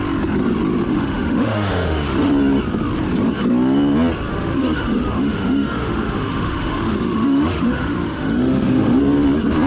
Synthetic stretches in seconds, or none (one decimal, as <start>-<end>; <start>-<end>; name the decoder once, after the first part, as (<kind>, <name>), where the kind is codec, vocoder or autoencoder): 0.8-2.3 (autoencoder, DAC-VAE); 4.3-9.0